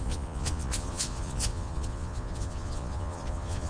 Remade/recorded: remade